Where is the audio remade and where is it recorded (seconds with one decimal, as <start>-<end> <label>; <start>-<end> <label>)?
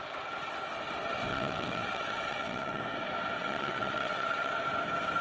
0.0-1.3 recorded; 1.3-2.8 remade; 2.8-3.4 recorded; 3.4-4.5 remade; 4.5-5.2 recorded